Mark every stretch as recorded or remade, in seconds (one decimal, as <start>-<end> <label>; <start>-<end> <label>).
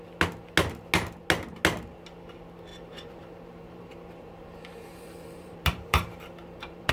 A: 0.0-2.7 recorded; 2.7-6.9 remade